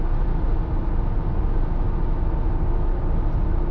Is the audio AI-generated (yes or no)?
no